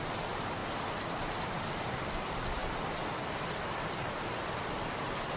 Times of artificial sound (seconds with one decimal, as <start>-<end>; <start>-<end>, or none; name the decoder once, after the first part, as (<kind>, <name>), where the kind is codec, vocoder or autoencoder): 0.0-0.6 (vocoder, BigVGAN v2); 1.4-2.6